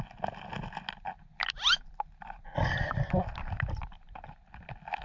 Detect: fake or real real